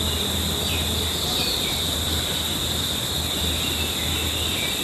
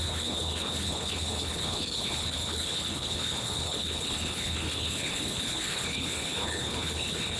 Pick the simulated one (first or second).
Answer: second